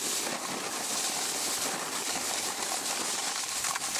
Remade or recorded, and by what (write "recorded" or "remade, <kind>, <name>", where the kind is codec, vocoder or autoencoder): recorded